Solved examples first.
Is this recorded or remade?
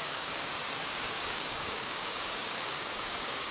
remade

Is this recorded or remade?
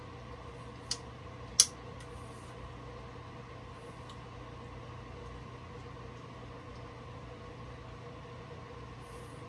recorded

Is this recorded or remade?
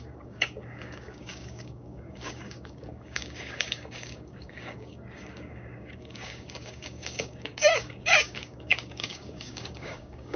remade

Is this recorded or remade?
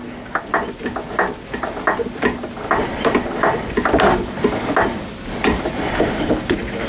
recorded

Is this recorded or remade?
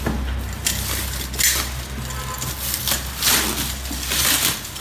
recorded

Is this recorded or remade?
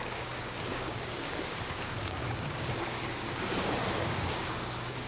remade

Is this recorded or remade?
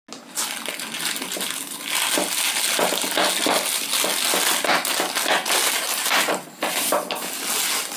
recorded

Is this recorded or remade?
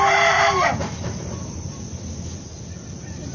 recorded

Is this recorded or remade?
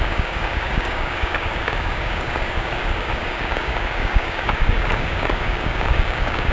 remade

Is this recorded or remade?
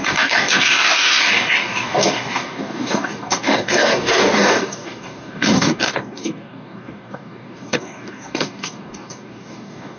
remade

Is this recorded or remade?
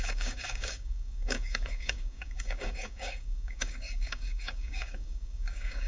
remade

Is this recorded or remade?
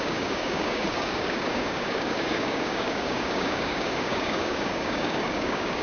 remade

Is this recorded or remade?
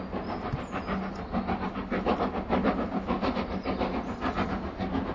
recorded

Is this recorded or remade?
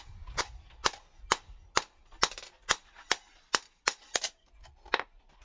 recorded